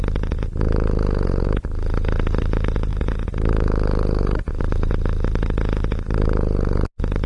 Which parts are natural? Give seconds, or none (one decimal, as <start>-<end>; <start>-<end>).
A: 0.0-7.3